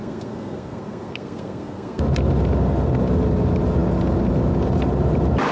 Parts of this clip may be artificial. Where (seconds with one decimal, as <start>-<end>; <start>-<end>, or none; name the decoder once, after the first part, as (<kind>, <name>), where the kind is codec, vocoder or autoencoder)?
0.0-2.0 (codec, SNAC)